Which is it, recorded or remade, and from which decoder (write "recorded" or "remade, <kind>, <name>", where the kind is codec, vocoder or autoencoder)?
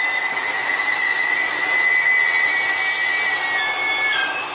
recorded